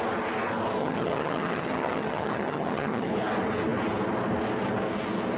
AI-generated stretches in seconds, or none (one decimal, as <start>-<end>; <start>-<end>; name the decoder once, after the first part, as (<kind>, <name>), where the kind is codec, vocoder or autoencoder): 0.8-3.1 (vocoder, HiFi-GAN)